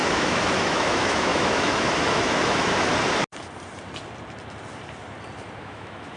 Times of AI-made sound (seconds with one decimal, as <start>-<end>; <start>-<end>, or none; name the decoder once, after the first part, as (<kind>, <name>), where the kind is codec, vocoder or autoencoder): 0.0-2.9 (autoencoder, DAC-VAE); 5.6-6.2